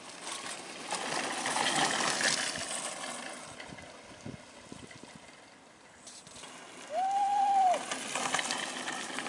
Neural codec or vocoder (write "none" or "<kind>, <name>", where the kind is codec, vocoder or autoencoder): none